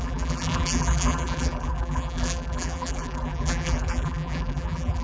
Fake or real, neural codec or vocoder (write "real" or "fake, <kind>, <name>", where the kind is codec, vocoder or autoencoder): fake, vocoder, BigVGAN v2